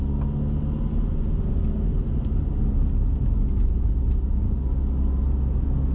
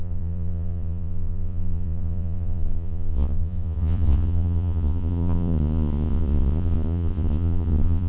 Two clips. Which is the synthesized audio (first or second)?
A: second